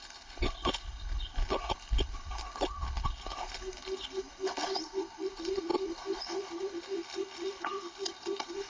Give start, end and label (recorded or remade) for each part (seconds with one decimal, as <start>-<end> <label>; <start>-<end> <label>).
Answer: 0.0-8.7 remade